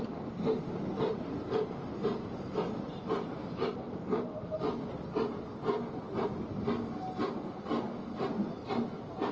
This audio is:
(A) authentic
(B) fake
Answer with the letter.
A